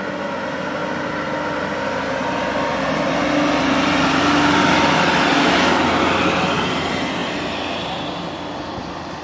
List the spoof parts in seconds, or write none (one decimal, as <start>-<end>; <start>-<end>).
none

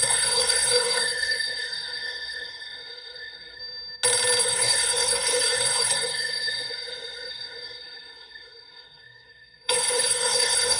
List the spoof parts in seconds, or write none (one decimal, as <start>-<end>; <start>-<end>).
0.0-3.6; 4.4-10.8

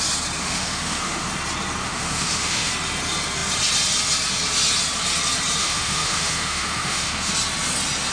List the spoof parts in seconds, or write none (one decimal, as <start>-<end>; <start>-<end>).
0.4-1.3; 1.8-2.7; 5.6-7.3

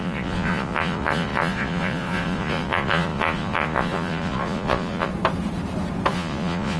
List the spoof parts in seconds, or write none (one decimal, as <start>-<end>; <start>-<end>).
0.0-5.1; 6.1-6.8

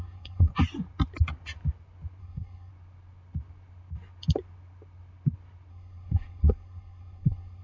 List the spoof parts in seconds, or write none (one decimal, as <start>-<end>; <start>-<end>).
0.0-0.5; 2.2-2.7; 5.7-7.6

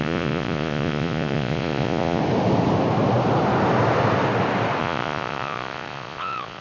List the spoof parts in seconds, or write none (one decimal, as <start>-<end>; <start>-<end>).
0.0-2.2; 4.8-6.6

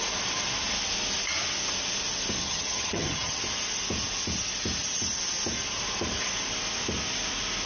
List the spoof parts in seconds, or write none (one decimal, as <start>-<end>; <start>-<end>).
2.4-3.4

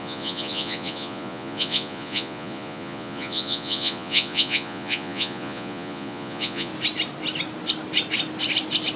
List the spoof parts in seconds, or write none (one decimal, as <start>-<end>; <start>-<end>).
0.0-6.7